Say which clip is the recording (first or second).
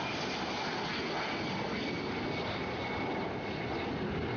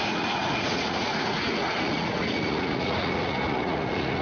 first